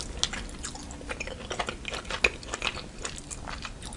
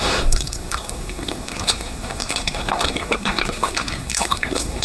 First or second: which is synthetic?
second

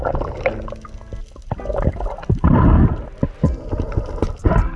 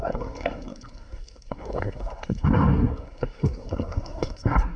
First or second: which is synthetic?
second